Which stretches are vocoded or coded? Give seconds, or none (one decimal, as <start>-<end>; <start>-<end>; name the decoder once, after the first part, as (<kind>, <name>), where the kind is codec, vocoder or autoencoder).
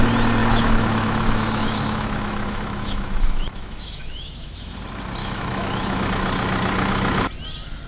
0.4-4.8 (autoencoder, DAC-VAE); 5.2-6.1